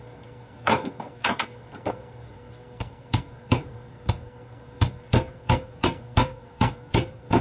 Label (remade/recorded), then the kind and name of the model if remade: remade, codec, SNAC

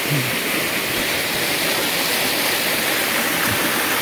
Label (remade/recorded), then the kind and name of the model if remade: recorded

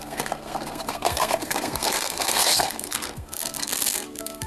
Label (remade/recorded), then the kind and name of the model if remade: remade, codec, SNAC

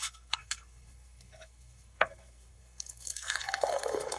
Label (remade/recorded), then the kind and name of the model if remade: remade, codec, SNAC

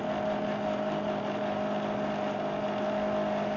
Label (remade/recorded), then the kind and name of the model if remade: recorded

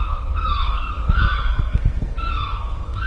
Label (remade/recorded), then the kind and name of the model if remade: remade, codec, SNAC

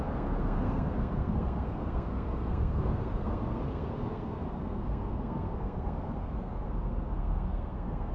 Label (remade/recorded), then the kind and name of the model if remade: remade, codec, SNAC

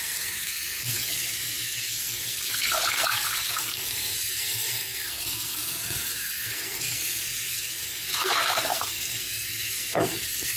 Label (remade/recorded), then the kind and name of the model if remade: remade, codec, SNAC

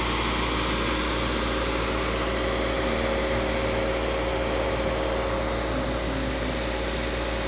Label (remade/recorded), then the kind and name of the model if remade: recorded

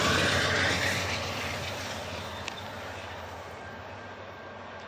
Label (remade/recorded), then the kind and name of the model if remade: recorded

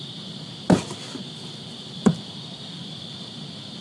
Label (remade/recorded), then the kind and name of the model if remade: recorded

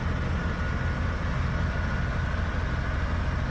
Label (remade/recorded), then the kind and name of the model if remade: recorded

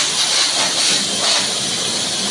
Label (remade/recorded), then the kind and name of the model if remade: recorded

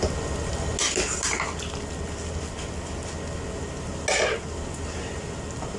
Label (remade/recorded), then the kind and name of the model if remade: recorded